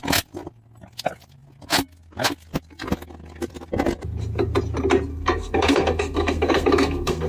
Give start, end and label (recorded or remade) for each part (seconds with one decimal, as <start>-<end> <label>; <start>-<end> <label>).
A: 0.0-5.1 recorded; 5.1-7.3 remade